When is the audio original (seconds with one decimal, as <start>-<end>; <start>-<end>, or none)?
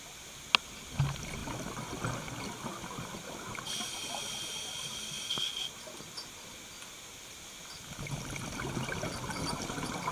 0.0-10.1